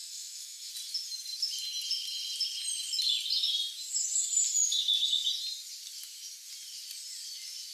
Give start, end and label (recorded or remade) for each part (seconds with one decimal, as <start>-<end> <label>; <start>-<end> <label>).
0.0-0.7 remade; 0.7-7.7 recorded